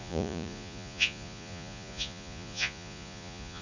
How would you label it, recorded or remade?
remade